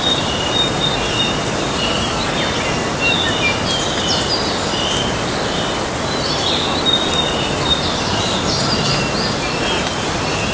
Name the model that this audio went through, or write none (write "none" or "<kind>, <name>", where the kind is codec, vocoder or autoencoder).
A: none